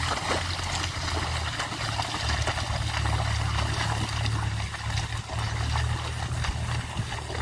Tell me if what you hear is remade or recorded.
recorded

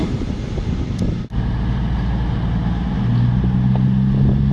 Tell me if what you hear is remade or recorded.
recorded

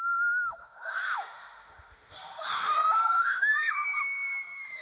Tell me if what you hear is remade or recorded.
remade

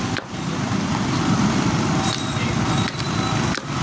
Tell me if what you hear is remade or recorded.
remade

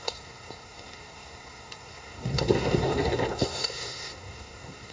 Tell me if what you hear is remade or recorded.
remade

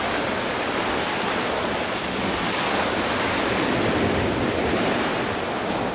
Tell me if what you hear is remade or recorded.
recorded